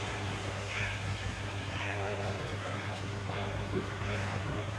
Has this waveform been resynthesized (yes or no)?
yes